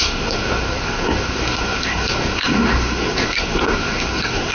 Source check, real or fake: fake